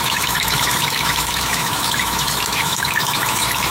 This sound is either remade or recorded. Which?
remade